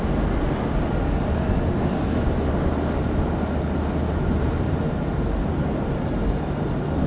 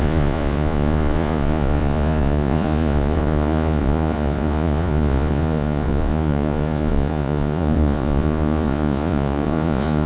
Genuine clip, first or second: first